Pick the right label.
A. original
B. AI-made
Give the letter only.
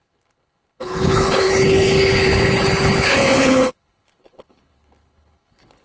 B